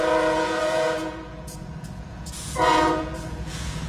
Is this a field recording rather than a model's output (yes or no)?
no